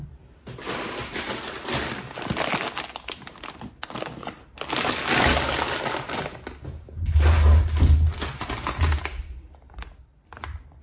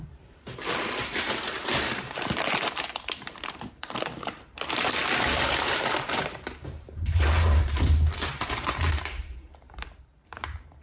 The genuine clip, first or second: first